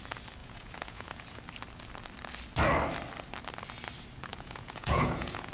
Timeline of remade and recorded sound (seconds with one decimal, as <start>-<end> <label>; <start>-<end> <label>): 0.0-0.4 recorded; 0.4-1.4 remade; 1.4-4.3 recorded; 4.3-5.5 remade